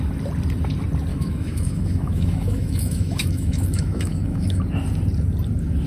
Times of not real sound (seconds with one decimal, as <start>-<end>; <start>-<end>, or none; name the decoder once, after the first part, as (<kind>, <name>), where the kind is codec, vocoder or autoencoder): 1.1-4.6 (autoencoder, DAC-VAE)

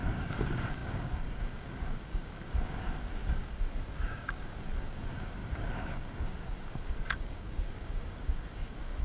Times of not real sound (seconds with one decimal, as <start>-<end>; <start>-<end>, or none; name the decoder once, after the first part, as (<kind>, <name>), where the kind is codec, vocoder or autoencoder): 0.0-9.0 (codec, DAC)

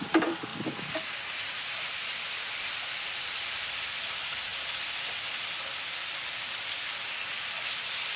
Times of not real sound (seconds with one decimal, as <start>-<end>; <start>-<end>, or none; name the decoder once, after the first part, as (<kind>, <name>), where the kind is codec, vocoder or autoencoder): 0.0-0.5 (vocoder, BigVGAN v2); 3.0-4.5; 5.9-8.2

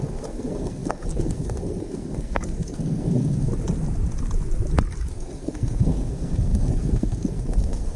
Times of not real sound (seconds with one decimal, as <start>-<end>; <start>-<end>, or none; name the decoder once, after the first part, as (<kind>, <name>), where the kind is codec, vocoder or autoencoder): 0.0-3.5 (codec, SNAC); 5.1-8.0

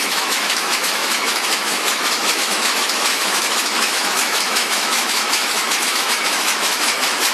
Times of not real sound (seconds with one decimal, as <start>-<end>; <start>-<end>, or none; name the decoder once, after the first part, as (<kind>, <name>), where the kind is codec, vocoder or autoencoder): 0.0-7.3 (autoencoder, DAC-VAE)